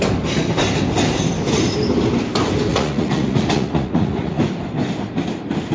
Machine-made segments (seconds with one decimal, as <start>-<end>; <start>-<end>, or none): 2.7-4.4